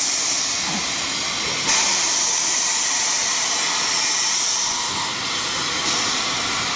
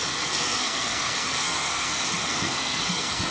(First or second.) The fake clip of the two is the second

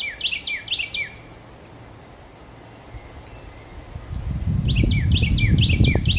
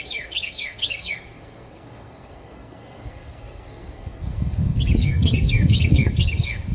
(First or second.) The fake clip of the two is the second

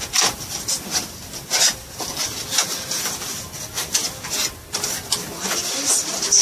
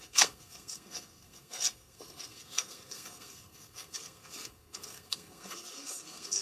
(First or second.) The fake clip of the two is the second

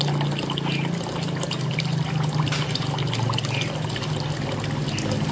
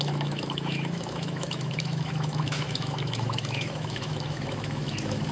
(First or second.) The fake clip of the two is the second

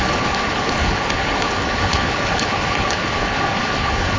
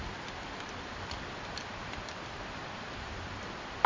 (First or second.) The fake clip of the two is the first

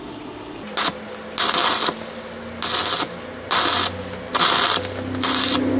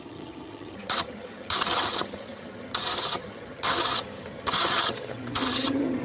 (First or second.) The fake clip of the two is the second